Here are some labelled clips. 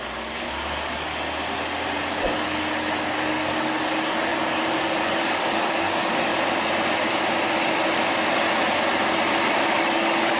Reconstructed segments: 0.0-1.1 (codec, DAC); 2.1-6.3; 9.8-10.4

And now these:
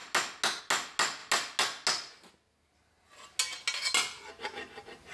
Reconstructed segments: none

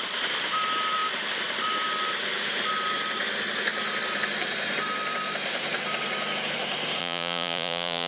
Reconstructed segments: 7.0-8.1 (vocoder, Vocos)

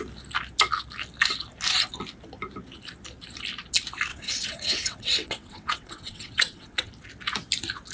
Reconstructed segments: 4.1-6.9 (vocoder, WaveNeXt)